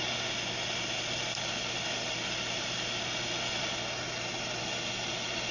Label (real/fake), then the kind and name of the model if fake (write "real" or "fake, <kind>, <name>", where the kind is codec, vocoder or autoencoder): real